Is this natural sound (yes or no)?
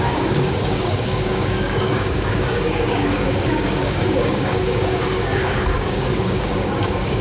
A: no